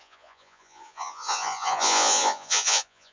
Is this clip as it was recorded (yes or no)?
no